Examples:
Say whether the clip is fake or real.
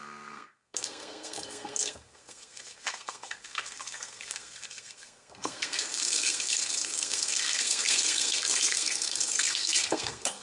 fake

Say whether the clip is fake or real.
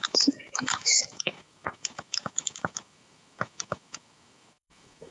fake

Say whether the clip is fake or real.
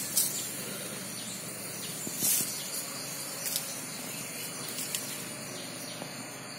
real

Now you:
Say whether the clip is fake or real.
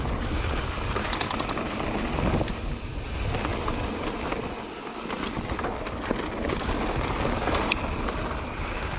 real